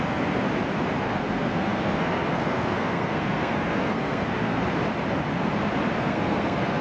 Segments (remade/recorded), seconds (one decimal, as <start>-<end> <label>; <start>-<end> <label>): 0.0-0.5 remade; 0.5-1.0 recorded; 1.0-4.6 remade; 4.6-6.0 recorded; 6.0-6.8 remade